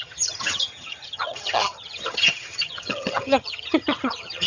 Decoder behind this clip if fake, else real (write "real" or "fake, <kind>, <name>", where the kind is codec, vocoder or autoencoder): fake, vocoder, HiFi-GAN